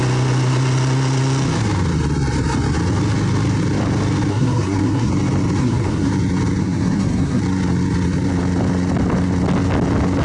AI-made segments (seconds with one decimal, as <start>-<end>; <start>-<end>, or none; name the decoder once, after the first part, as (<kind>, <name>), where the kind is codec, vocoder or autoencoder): 4.3-5.1 (codec, SNAC); 5.6-6.1; 6.6-7.4